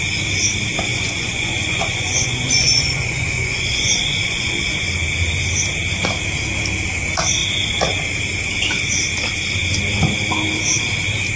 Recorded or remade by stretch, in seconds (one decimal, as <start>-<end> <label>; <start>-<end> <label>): 0.0-0.9 recorded; 0.9-4.9 remade; 4.9-11.4 recorded